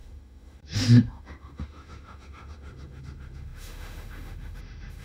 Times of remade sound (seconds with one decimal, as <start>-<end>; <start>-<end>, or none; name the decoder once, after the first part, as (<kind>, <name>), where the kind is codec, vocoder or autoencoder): 0.0-5.0 (autoencoder, DAC-VAE)